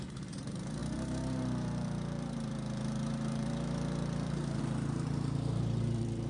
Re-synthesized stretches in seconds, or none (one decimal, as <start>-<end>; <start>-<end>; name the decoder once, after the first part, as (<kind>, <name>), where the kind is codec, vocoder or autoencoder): 0.0-6.3 (vocoder, BigVGAN v2)